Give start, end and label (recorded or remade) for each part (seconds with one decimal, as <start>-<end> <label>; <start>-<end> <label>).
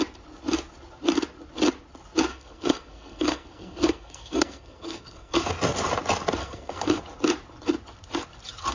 0.0-2.3 recorded; 2.3-5.5 remade; 5.5-6.4 recorded; 6.4-7.0 remade; 7.0-8.7 recorded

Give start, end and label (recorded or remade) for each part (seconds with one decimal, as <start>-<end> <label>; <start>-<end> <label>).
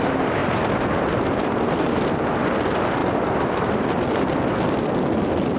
0.0-5.6 recorded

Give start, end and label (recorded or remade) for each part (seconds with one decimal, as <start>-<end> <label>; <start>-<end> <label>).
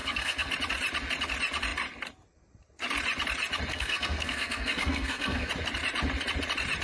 0.0-0.5 remade; 0.5-3.7 recorded; 3.7-5.5 remade; 5.5-6.8 recorded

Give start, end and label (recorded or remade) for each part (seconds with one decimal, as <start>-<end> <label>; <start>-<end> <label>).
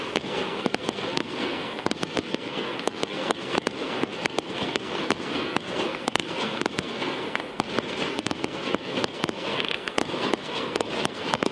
0.0-11.5 remade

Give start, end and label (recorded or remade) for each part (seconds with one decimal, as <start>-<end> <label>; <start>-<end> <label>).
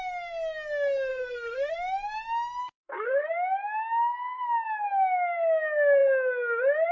0.0-1.1 recorded; 1.1-1.7 remade; 1.7-2.6 recorded; 2.6-3.3 remade; 3.3-6.9 recorded